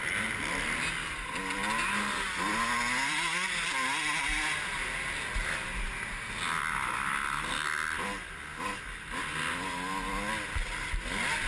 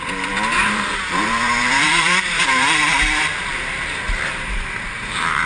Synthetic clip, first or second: second